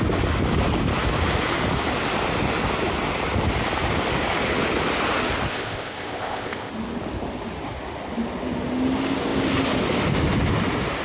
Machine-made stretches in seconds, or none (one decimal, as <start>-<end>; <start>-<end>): 5.5-6.7